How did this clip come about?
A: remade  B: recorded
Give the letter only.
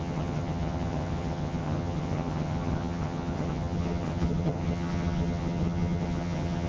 A